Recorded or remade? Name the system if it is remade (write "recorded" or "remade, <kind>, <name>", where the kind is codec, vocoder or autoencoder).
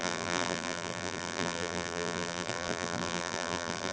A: remade, vocoder, BigVGAN v2